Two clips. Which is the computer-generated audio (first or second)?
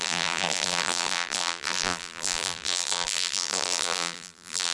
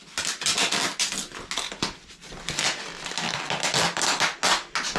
first